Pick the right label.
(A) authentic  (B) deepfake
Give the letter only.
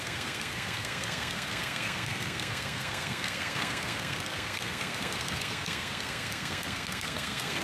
B